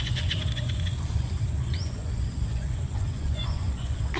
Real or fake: fake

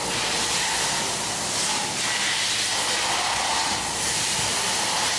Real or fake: real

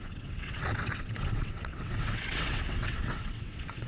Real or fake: fake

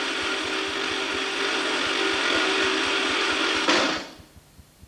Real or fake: real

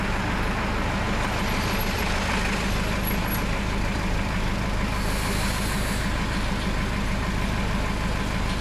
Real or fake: real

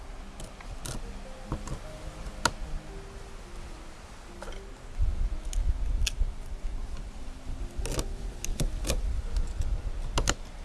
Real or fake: real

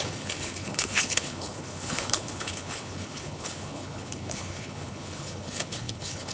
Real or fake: fake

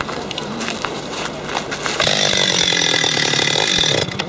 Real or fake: real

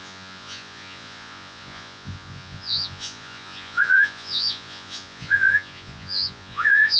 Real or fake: fake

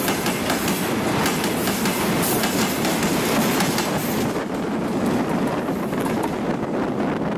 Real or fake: real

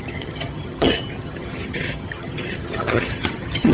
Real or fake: fake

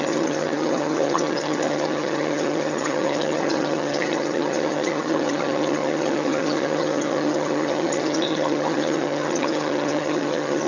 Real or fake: fake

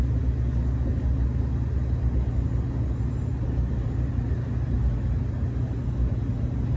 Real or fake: real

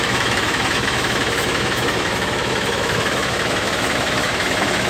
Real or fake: fake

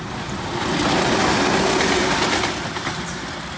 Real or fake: real